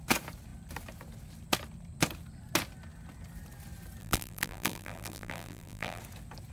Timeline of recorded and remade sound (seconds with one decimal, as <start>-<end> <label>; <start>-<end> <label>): 0.0-4.0 recorded; 4.0-6.0 remade; 6.0-6.5 recorded